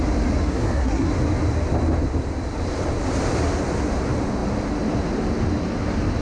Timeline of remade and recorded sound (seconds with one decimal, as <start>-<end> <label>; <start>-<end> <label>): 0.0-0.4 recorded; 0.4-1.1 remade; 1.1-6.2 recorded